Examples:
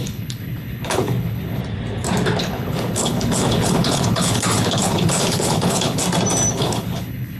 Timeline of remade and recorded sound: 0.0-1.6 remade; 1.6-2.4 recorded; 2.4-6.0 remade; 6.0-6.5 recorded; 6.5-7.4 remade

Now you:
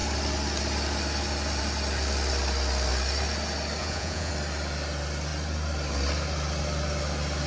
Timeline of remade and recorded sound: 0.0-3.8 recorded; 3.8-4.3 remade; 4.3-7.5 recorded

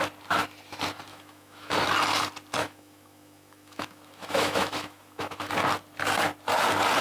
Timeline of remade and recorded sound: 0.0-1.1 recorded; 1.1-1.8 remade; 1.8-2.6 recorded; 2.6-5.5 remade; 5.5-7.0 recorded

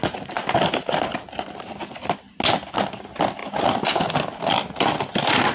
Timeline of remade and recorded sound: 0.0-5.5 recorded

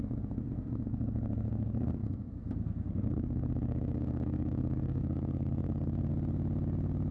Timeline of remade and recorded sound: 0.0-6.1 remade; 6.1-7.1 recorded

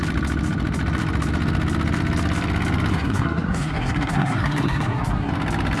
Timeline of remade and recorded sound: 0.0-2.9 recorded; 2.9-5.3 remade; 5.3-5.8 recorded